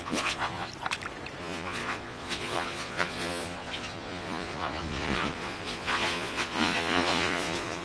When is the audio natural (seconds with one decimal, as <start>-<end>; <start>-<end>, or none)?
0.7-1.4